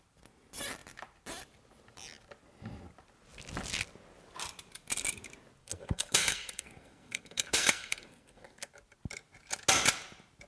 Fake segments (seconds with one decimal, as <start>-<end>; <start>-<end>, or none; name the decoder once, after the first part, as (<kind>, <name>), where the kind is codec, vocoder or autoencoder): 5.6-8.7 (codec, SNAC)